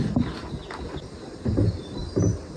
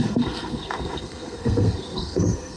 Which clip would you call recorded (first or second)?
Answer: first